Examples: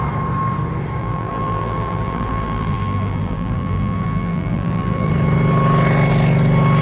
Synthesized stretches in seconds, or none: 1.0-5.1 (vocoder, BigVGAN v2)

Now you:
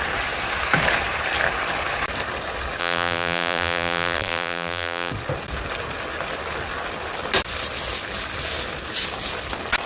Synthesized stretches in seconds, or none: 2.8-5.1 (vocoder, BigVGAN v2)

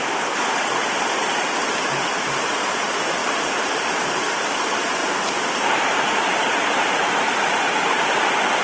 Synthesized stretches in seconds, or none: 3.2-4.6 (vocoder, BigVGAN v2); 5.0-8.2

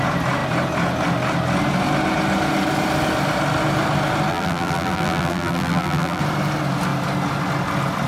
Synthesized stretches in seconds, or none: 4.3-6.2 (vocoder, BigVGAN v2)

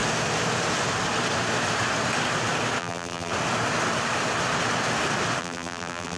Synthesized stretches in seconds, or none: 2.8-3.3 (vocoder, BigVGAN v2); 5.4-6.2

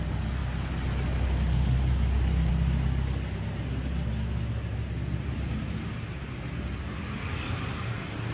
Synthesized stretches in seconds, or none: none

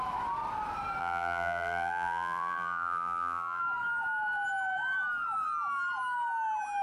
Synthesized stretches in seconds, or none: 1.0-3.6 (vocoder, BigVGAN v2)